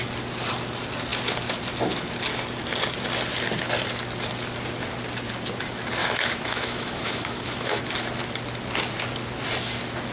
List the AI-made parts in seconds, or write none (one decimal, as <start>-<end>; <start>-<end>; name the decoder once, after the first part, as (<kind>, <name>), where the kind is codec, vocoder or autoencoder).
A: 6.0-7.8 (autoencoder, DAC-VAE)